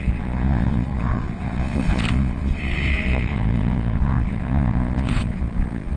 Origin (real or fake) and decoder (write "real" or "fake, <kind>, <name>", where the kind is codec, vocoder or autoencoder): fake, vocoder, Vocos